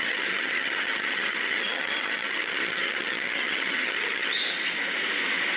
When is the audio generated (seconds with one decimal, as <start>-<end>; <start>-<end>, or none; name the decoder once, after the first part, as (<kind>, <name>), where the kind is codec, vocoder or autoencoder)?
0.0-4.4 (vocoder, HiFi-GAN)